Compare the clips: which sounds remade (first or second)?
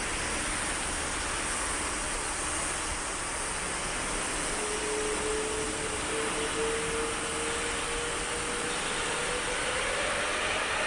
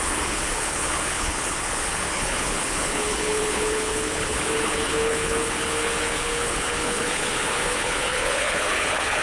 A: second